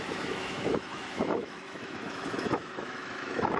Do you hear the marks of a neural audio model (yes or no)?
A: yes